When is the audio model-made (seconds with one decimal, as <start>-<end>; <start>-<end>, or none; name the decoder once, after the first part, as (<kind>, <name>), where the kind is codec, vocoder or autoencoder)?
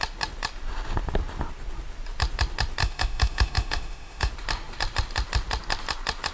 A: 2.8-4.3 (autoencoder, DAC-VAE)